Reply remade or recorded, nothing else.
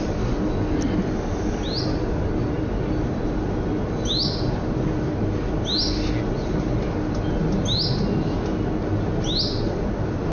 recorded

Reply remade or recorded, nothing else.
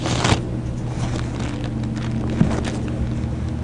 recorded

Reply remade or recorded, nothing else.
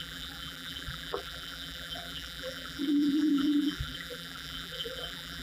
remade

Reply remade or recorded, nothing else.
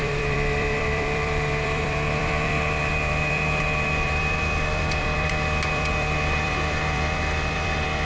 remade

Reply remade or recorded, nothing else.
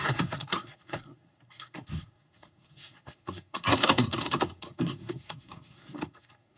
remade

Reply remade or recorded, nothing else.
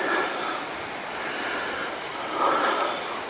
recorded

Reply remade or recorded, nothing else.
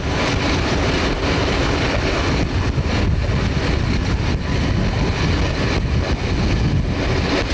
recorded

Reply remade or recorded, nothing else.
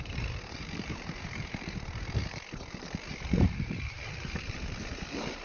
remade